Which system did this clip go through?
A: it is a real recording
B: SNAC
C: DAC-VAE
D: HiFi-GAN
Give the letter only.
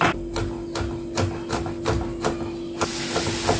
A